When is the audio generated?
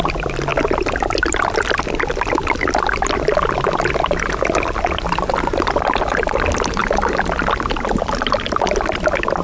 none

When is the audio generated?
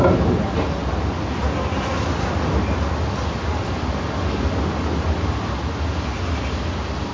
none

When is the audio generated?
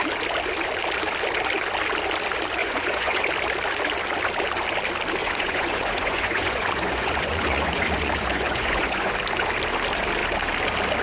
2.6-3.3; 5.2-9.1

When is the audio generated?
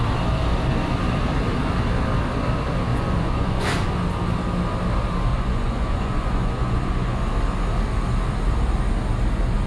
2.9-3.7; 5.3-7.3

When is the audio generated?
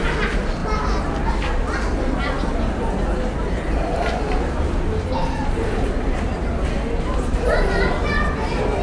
none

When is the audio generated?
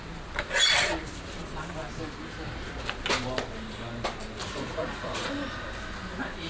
4.4-5.3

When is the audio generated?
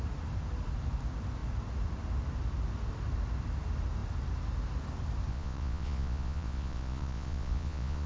5.3-8.1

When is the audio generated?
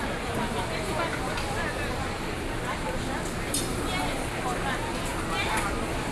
none